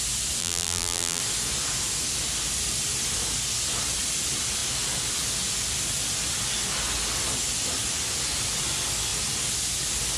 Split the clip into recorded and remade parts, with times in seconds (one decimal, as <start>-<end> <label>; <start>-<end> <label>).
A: 0.0-0.4 recorded; 0.4-1.2 remade; 1.2-10.2 recorded